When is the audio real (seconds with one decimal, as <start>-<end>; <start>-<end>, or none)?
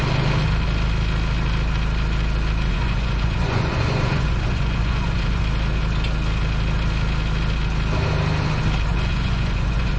0.0-2.7; 5.4-8.9